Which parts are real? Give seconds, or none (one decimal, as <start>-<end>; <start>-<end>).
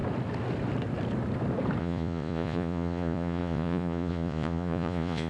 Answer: 0.0-1.8